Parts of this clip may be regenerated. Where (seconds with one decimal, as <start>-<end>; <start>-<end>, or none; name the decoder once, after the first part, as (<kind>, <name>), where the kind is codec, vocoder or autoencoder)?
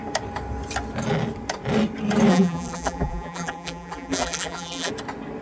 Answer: 2.3-4.9 (vocoder, BigVGAN v2)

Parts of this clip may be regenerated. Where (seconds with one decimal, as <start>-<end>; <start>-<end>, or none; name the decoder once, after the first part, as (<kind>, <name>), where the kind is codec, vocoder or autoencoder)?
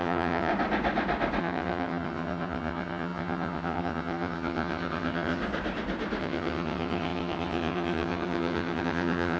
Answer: 0.0-0.5 (vocoder, HiFi-GAN); 1.4-5.4; 6.2-9.4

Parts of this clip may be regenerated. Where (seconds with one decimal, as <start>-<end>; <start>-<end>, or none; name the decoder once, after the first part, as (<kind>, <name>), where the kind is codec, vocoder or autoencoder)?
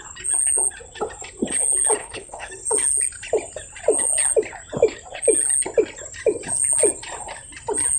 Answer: 2.0-2.5 (codec, HILCodec)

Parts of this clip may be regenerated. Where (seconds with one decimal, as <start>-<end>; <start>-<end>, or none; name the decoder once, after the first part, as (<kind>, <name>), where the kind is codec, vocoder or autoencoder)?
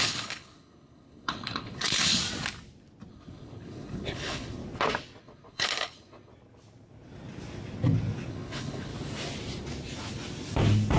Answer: 0.0-2.2 (codec, HILCodec); 3.1-4.6; 5.2-6.3; 8.3-8.9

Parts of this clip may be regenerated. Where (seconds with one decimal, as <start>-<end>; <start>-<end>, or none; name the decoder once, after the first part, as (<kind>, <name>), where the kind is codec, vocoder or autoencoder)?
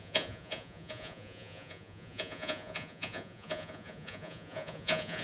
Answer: 0.0-5.2 (vocoder, Vocos)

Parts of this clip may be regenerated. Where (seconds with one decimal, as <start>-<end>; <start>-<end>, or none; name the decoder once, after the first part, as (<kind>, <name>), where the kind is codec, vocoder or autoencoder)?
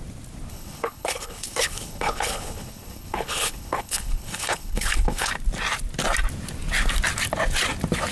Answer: 0.5-5.3 (codec, HILCodec)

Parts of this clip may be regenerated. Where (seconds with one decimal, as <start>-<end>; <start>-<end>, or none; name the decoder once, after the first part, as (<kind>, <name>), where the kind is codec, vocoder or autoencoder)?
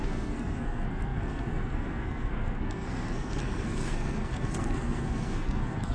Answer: 0.0-5.9 (codec, SNAC)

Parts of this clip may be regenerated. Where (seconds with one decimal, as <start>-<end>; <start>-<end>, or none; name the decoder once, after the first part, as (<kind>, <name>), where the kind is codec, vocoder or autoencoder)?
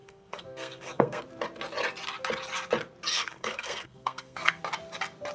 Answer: 0.0-1.2 (codec, SNAC); 3.1-4.6